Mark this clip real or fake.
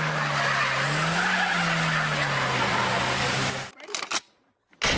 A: real